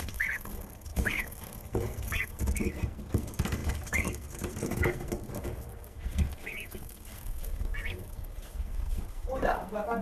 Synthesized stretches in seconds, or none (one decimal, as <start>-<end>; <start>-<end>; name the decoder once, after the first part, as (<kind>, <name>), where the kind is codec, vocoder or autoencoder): 0.0-10.0 (codec, SNAC)